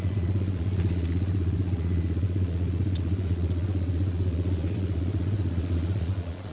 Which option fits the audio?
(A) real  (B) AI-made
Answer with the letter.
B